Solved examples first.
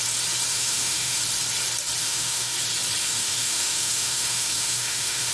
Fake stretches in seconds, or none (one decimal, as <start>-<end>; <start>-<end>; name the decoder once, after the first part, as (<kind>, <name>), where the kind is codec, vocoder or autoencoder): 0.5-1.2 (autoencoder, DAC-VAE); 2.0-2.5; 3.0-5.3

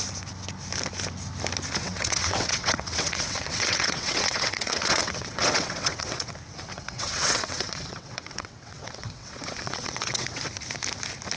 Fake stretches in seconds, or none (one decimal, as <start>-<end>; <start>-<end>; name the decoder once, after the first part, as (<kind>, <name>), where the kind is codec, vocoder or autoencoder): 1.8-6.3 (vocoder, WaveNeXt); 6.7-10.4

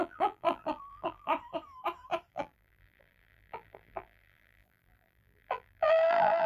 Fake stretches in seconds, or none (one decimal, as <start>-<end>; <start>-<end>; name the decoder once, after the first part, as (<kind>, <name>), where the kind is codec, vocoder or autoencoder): 0.0-1.3 (vocoder, BigVGAN v2); 2.3-6.5

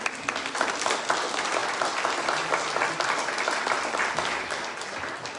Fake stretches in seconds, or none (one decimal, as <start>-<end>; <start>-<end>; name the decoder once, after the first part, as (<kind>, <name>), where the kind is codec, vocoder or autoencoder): none

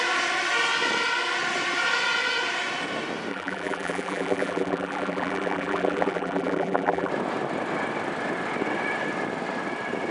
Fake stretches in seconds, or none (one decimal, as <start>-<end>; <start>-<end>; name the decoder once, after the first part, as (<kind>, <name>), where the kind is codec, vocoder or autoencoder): 3.3-7.1 (vocoder, BigVGAN v2)